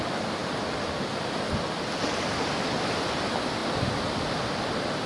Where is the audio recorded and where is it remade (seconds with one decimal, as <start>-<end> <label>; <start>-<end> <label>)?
0.0-5.1 recorded